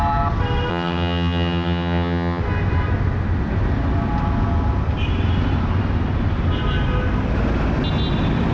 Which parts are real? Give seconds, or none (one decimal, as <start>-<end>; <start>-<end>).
0.0-0.7; 2.4-8.5